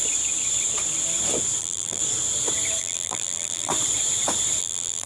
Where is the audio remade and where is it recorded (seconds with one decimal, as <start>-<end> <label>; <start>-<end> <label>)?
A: 0.0-1.6 recorded; 1.6-2.0 remade; 2.0-2.8 recorded; 2.8-3.7 remade; 3.7-4.6 recorded; 4.6-5.1 remade